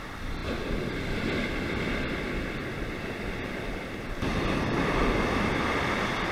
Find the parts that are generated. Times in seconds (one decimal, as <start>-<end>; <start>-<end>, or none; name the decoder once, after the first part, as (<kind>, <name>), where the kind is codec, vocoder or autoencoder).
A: 0.0-2.6 (vocoder, BigVGAN v2); 4.3-6.3